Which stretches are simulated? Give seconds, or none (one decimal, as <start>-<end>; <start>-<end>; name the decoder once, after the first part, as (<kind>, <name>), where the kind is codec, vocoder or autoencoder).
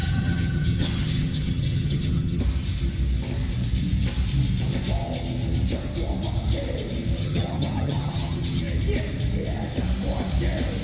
0.0-2.4 (vocoder, HiFi-GAN); 7.2-8.6